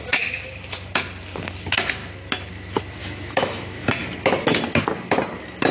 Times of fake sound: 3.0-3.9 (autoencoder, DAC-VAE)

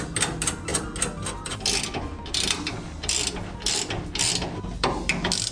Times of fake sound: none

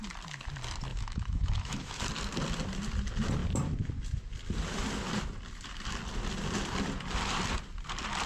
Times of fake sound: 0.9-2.0 (autoencoder, DAC-VAE)